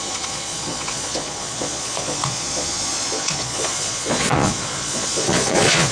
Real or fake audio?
fake